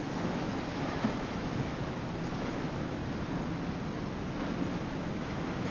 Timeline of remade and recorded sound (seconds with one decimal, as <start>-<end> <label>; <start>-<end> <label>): 0.0-3.0 remade; 3.0-4.7 recorded; 4.7-5.7 remade

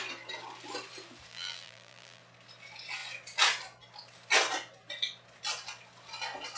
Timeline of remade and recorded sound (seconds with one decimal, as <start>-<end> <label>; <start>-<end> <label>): 0.0-1.3 recorded; 1.3-2.2 remade; 2.2-6.6 recorded

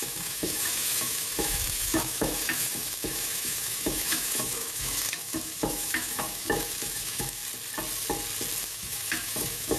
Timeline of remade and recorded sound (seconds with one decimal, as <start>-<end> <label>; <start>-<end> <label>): 0.0-7.4 remade; 7.4-8.6 recorded; 8.6-9.8 remade

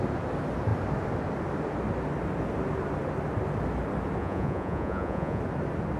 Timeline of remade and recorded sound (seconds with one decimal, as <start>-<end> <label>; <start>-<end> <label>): 0.0-4.2 recorded; 4.2-5.4 remade; 5.4-6.0 recorded

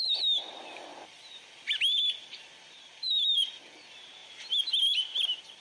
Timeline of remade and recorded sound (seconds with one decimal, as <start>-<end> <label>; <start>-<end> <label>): 0.0-0.9 remade; 0.9-2.1 recorded; 2.1-4.2 remade; 4.2-4.8 recorded; 4.8-5.6 remade

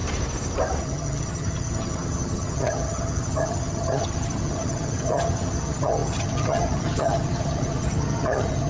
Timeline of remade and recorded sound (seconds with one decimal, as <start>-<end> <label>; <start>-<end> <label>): 0.0-0.8 recorded; 0.8-8.7 remade

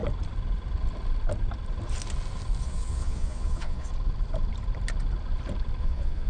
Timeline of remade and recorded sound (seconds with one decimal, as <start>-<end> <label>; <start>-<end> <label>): 0.0-2.6 recorded; 2.6-3.9 remade; 3.9-5.8 recorded; 5.8-6.3 remade

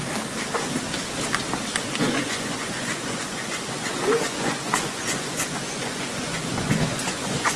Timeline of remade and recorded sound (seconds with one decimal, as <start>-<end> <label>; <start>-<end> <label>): 0.0-2.0 recorded; 2.0-7.6 remade